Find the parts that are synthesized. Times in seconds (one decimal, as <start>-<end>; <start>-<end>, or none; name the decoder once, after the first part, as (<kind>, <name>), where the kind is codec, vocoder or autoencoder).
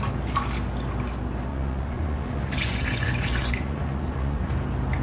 1.5-4.5 (vocoder, Vocos)